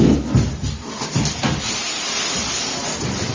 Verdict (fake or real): real